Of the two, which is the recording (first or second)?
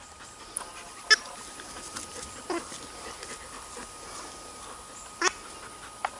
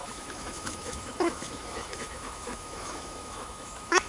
first